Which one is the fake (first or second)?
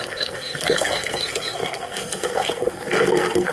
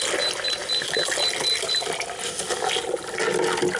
first